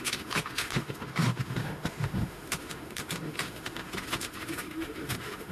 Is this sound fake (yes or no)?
yes